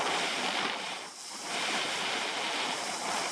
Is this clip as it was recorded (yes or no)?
yes